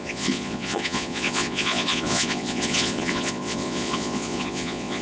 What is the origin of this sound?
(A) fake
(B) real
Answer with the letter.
A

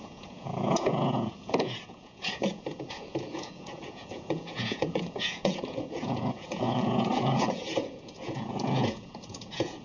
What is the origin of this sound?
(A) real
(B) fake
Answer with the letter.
B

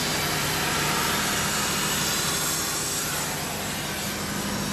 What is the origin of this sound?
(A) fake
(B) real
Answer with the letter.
B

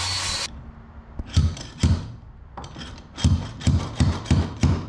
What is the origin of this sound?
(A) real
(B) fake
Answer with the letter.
A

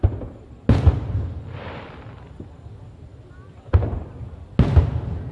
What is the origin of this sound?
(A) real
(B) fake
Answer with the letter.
A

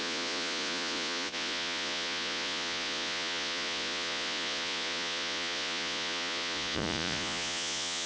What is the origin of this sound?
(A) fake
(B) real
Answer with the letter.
A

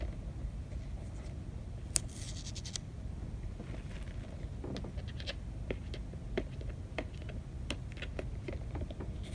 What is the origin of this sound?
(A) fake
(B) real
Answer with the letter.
B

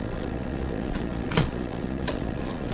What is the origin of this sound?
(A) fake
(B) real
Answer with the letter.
A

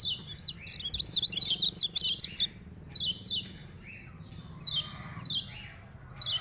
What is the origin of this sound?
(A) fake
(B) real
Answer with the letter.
B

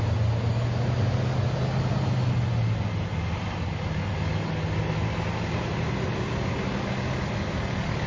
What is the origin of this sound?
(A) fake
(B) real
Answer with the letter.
B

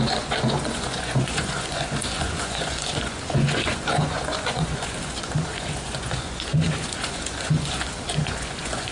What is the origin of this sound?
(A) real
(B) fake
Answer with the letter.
B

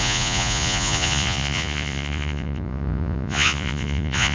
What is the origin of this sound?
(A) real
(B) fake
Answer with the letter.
B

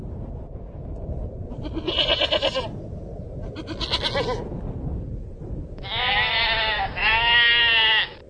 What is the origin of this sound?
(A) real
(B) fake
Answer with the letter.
A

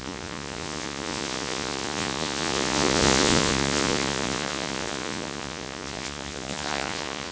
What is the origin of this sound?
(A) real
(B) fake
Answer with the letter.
B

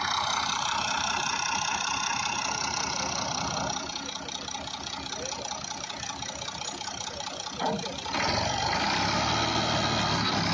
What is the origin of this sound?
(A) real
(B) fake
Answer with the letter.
A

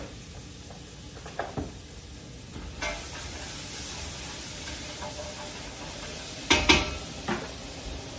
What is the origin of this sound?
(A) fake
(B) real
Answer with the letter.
B